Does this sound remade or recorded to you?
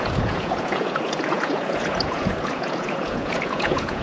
remade